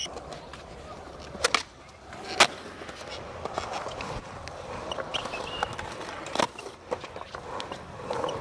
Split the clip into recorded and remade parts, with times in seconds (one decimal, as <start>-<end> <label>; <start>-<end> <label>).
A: 0.0-8.4 recorded